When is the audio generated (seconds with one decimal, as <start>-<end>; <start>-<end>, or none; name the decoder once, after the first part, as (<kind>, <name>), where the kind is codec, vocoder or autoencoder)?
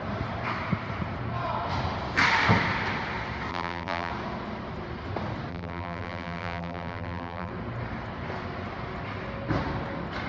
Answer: 3.5-4.1 (vocoder, BigVGAN v2); 5.5-7.5